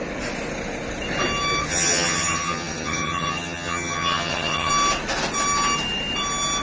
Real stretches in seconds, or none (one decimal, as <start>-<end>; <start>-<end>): 0.0-1.7; 4.7-6.6